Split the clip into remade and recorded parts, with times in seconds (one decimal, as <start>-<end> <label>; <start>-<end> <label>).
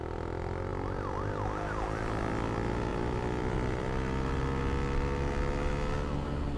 0.0-0.7 recorded; 0.7-2.2 remade; 2.2-2.9 recorded; 2.9-4.6 remade; 4.6-6.6 recorded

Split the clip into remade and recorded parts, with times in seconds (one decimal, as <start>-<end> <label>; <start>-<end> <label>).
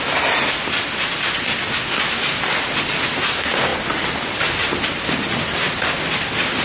0.0-6.6 recorded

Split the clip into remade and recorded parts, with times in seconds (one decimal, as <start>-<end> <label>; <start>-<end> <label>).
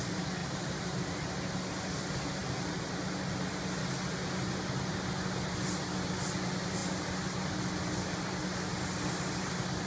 0.0-0.4 recorded; 0.4-1.1 remade; 1.1-9.9 recorded